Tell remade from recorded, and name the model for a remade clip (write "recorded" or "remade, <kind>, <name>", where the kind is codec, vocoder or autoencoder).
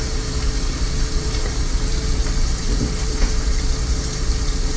remade, vocoder, BigVGAN v2